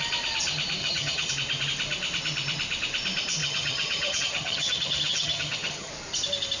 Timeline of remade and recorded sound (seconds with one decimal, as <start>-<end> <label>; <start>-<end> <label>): 0.0-0.8 recorded; 0.8-1.3 remade; 1.3-3.4 recorded; 3.4-5.9 remade; 5.9-6.6 recorded